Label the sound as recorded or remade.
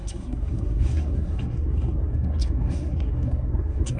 remade